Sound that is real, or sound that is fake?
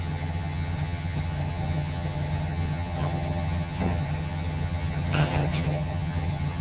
fake